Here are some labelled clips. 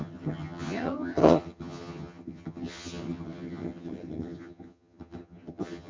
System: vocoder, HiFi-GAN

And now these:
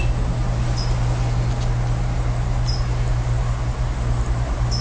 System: none